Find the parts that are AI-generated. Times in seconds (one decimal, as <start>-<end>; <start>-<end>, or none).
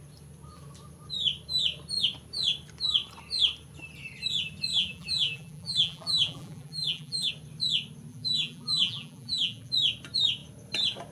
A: 4.7-7.3; 8.1-9.7